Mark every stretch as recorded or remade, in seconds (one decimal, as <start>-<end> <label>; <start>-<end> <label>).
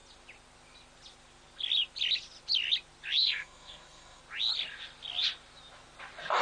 0.0-3.2 recorded; 3.2-4.2 remade; 4.2-6.4 recorded